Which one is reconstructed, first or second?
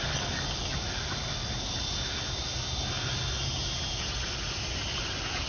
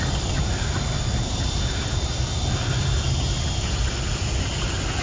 second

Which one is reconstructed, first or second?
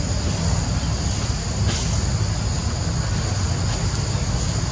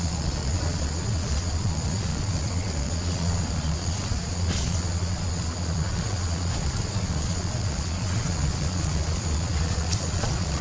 second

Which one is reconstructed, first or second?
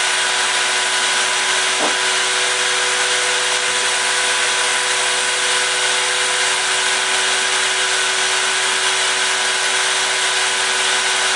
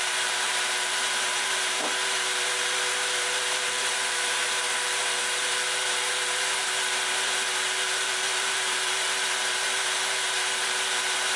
second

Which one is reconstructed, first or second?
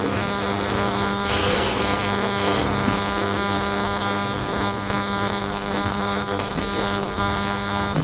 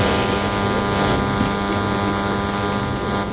first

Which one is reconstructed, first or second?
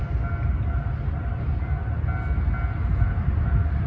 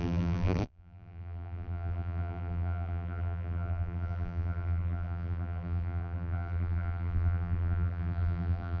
second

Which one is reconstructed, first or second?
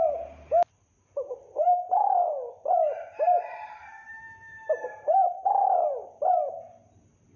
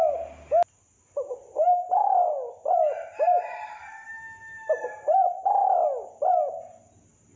first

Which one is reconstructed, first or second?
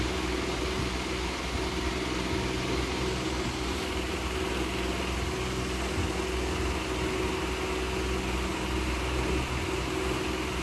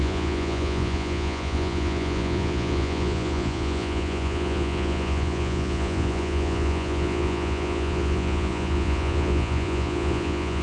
second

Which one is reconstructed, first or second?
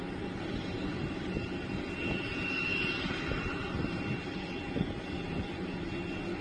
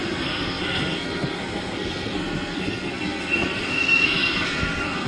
second